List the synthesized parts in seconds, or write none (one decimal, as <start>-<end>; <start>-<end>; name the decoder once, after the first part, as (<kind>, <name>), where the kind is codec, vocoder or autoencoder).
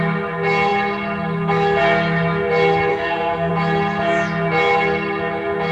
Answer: 2.9-3.5 (codec, SNAC)